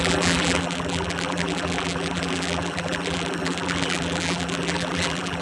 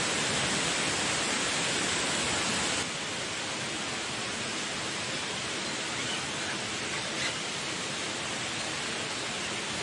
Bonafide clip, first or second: second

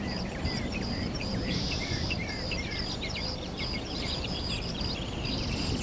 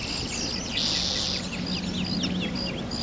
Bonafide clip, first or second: second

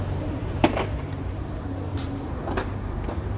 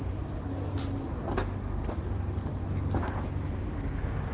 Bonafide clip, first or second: second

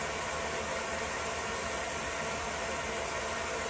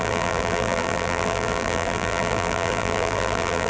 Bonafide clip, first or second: first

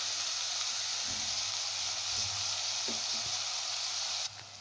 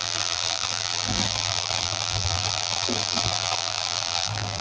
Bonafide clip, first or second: first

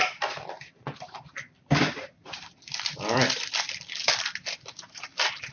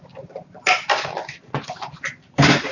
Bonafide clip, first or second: second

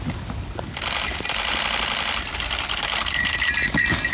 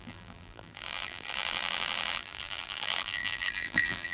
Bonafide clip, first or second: first